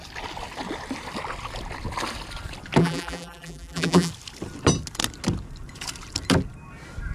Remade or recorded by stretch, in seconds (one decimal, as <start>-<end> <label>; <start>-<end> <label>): 0.0-2.8 recorded; 2.8-4.1 remade; 4.1-7.1 recorded